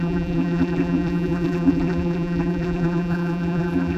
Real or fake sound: fake